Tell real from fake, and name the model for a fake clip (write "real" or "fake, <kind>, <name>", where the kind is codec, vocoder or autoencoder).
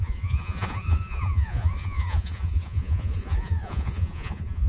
fake, vocoder, Vocos